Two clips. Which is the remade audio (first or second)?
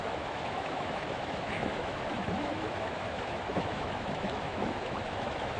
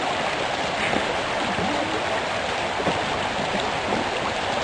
first